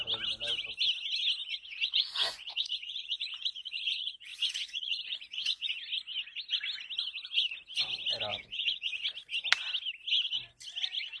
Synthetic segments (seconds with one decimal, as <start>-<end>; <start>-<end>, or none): 1.4-5.7; 8.3-9.0